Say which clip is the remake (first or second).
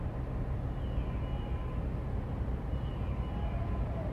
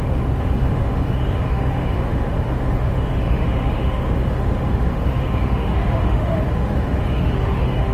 second